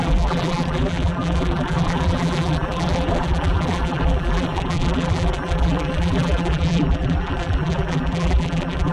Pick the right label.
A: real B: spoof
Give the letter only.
B